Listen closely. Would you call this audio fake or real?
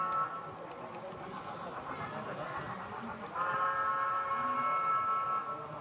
real